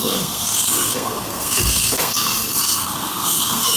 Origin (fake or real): fake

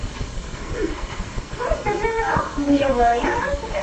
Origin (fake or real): fake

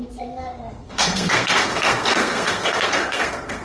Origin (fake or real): fake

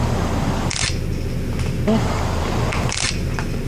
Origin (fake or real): real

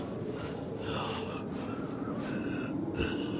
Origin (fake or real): real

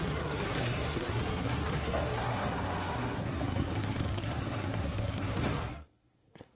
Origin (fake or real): fake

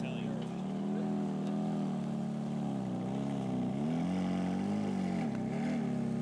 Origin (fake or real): real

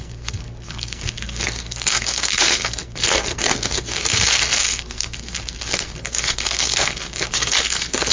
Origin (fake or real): fake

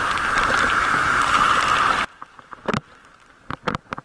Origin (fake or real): real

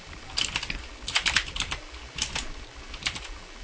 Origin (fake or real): real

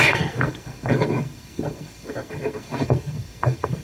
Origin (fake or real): fake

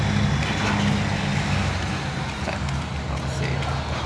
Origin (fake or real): real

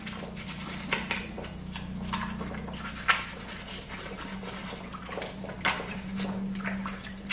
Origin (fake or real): real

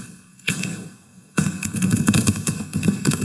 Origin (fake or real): fake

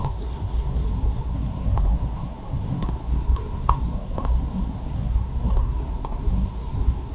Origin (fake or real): fake